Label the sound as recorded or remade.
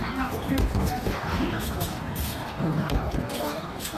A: remade